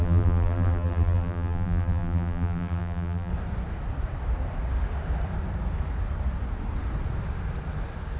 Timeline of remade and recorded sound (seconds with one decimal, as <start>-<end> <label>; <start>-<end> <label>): 0.0-3.3 remade; 3.3-8.2 recorded